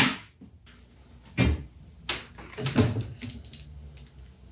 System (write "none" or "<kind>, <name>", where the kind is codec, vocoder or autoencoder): none